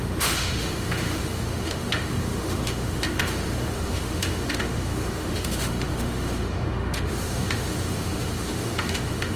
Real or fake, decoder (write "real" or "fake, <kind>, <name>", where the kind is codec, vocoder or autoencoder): fake, autoencoder, DAC-VAE